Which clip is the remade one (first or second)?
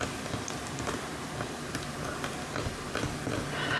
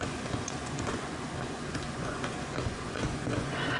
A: second